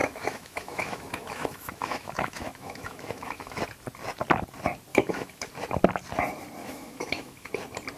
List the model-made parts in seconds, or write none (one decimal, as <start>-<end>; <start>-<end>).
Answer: 0.0-3.6; 4.9-5.5; 6.6-7.5